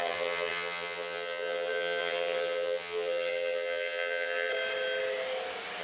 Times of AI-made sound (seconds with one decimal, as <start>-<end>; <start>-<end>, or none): 0.0-4.5